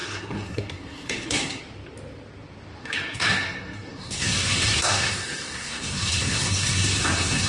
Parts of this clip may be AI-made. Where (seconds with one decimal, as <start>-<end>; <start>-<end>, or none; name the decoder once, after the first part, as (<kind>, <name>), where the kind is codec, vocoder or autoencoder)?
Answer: 0.0-1.6 (codec, SNAC); 2.8-7.5